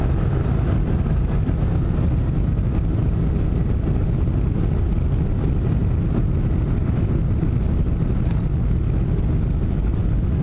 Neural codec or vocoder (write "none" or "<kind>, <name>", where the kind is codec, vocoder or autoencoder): none